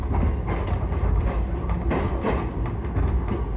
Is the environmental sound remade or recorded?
recorded